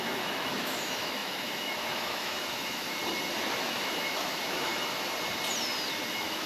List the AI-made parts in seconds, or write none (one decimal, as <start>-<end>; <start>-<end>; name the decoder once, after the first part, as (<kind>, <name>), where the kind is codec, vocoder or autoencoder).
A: 0.0-3.0 (autoencoder, DAC-VAE); 3.6-4.7; 6.1-6.5